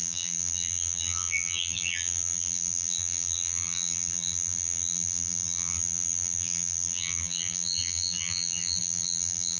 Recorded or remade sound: remade